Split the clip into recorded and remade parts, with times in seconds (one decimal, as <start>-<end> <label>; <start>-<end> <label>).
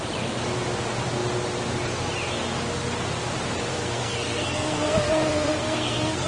0.0-3.7 recorded; 3.7-6.3 remade